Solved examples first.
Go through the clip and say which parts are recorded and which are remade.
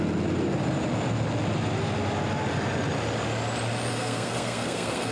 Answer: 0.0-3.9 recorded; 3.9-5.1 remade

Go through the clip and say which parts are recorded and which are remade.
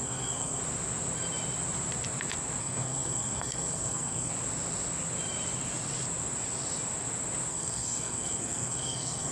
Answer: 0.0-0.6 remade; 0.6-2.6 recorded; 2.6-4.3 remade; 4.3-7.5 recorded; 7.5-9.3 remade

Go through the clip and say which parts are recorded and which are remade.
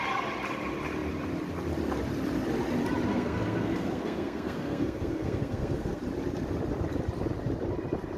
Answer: 0.0-3.1 recorded; 3.1-6.0 remade; 6.0-8.2 recorded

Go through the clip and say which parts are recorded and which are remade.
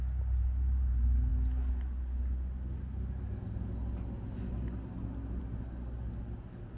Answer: 0.0-6.8 recorded